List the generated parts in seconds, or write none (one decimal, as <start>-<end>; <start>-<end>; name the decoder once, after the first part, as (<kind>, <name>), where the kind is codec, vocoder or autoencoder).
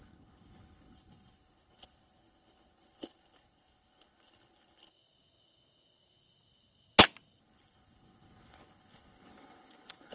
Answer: 0.0-4.9 (codec, HILCodec); 7.4-10.1